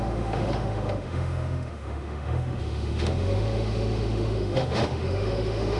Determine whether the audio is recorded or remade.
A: remade